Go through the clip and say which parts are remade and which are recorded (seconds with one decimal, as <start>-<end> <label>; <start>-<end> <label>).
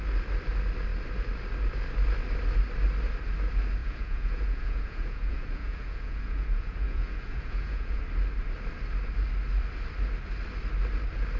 0.0-3.8 recorded; 3.8-8.0 remade; 8.0-11.4 recorded